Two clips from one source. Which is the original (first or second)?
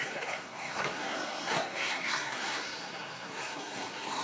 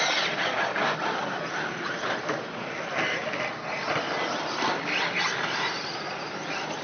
second